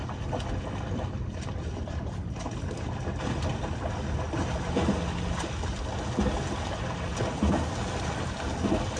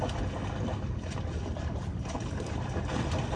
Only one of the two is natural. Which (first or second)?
first